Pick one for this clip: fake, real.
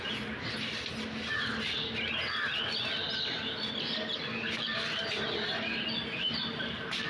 real